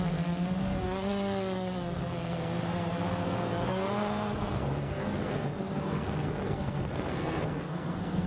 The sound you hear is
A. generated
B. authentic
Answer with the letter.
A